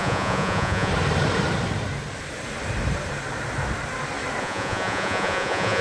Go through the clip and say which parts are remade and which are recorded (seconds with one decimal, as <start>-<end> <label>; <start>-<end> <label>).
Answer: 0.0-0.9 remade; 0.9-4.4 recorded; 4.4-5.8 remade